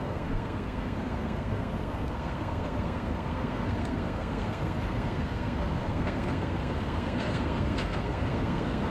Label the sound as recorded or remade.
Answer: remade